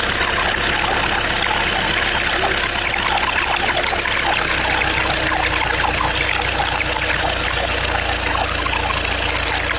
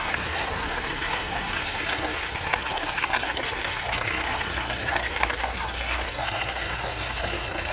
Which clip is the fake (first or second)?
second